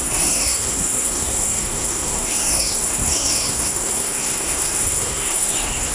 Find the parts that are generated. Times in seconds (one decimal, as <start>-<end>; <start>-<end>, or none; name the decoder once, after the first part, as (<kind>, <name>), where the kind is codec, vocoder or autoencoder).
0.0-5.9 (codec, SNAC)